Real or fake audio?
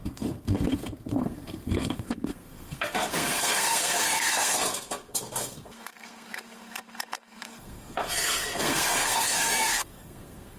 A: fake